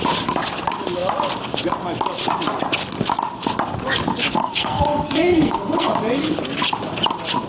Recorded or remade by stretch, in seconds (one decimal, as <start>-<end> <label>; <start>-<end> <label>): 0.0-4.2 recorded; 4.2-5.9 remade; 5.9-7.5 recorded